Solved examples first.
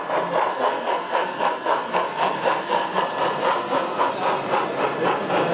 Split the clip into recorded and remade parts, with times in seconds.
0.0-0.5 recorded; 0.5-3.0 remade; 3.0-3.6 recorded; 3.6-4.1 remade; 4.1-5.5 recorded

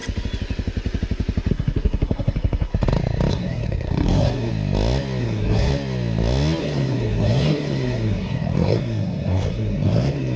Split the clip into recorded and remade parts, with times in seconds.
0.0-1.5 recorded; 1.5-2.7 remade; 2.7-3.3 recorded; 3.3-4.5 remade; 4.5-5.2 recorded; 5.2-5.7 remade; 5.7-6.6 recorded; 6.6-10.4 remade

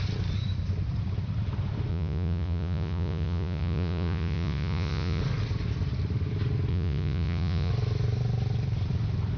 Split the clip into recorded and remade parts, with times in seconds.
0.0-1.9 recorded; 1.9-5.2 remade; 5.2-6.7 recorded; 6.7-7.7 remade; 7.7-9.4 recorded

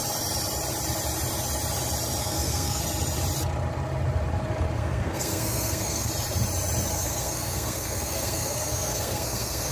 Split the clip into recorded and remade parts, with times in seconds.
0.0-2.2 recorded; 2.2-2.8 remade; 2.8-4.8 recorded; 4.8-6.1 remade; 6.1-6.9 recorded; 6.9-9.7 remade

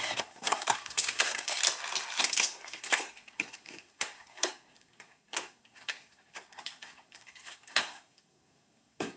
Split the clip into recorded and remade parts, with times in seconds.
0.0-1.6 remade; 1.6-2.2 recorded; 2.2-9.2 remade